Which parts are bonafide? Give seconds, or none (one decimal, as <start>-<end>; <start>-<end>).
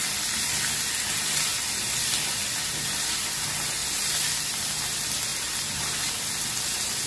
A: 0.0-5.3; 6.5-7.1